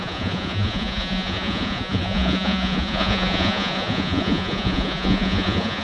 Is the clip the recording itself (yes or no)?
no